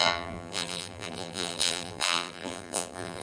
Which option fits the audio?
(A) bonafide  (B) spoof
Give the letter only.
B